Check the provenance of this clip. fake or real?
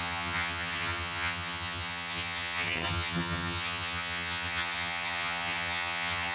fake